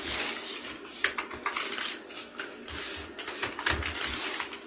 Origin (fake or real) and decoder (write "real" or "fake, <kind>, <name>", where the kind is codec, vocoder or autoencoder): real